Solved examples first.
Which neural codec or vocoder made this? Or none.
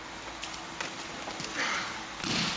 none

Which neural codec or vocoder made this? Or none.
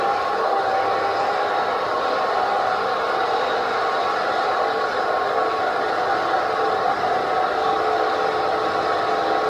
none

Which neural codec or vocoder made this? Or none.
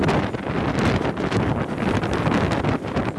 vocoder, BigVGAN v2